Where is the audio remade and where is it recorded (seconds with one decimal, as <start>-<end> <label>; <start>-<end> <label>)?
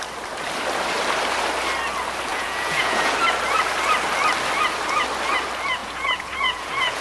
0.0-2.3 recorded; 2.3-3.1 remade; 3.1-5.8 recorded; 5.8-7.0 remade